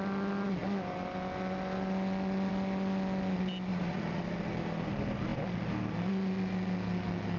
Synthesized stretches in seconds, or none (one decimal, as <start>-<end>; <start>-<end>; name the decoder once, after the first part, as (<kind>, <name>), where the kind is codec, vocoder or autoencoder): 3.7-4.2 (vocoder, Vocos)